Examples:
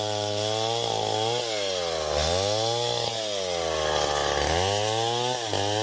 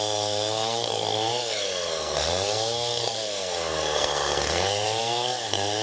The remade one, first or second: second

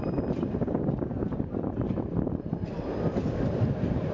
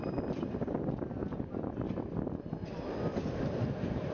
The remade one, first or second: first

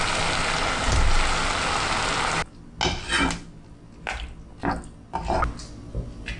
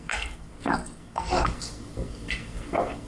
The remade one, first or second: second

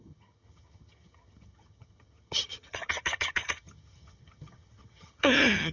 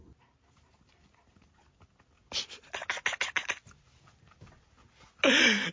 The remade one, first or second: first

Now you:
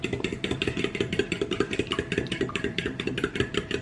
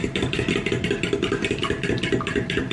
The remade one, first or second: first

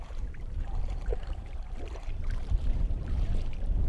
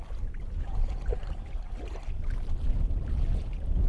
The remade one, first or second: first